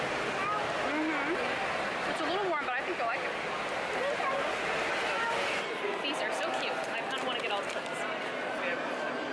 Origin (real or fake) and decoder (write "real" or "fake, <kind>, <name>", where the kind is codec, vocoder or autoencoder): real